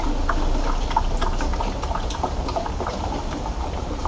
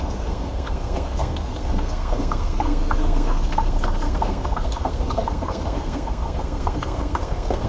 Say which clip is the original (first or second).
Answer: first